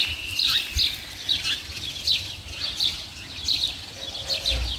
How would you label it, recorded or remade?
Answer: recorded